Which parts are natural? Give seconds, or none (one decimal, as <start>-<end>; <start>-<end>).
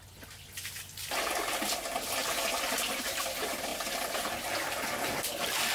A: 0.0-5.7